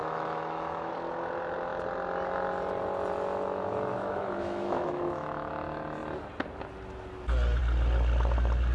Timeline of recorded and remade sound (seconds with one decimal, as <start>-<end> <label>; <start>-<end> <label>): 0.0-0.9 remade; 0.9-3.9 recorded; 3.9-5.5 remade; 5.5-8.7 recorded